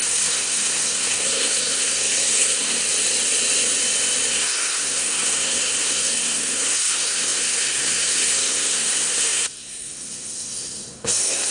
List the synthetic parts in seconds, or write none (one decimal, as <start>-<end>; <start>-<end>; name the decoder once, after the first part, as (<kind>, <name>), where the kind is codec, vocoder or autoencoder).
0.0-2.8 (codec, SNAC); 4.3-11.5